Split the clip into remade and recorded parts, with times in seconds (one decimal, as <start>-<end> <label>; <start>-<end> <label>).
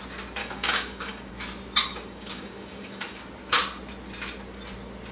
0.0-0.4 recorded; 0.4-1.3 remade; 1.3-1.9 recorded; 1.9-3.2 remade; 3.2-5.1 recorded